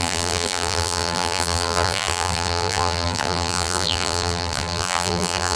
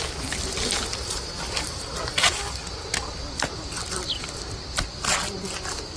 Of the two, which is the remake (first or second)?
first